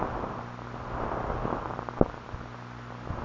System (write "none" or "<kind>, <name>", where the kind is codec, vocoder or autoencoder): none